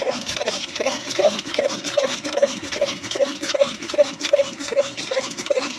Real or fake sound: fake